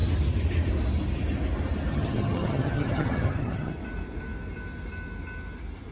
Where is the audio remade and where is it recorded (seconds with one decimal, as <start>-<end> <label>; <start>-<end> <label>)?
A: 0.0-1.9 recorded; 1.9-3.7 remade; 3.7-5.9 recorded